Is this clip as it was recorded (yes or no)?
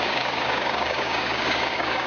no